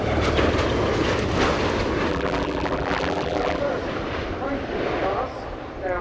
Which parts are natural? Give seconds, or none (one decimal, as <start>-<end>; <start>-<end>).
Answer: 0.0-2.1; 3.6-6.0